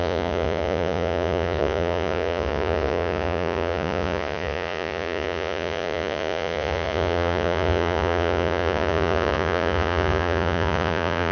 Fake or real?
fake